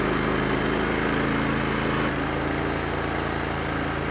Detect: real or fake real